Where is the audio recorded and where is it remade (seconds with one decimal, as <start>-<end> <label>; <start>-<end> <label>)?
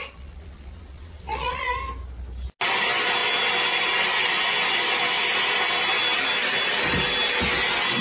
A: 0.0-1.7 remade; 1.7-8.0 recorded